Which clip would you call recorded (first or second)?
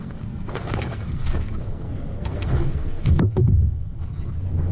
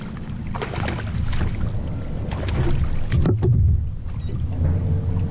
second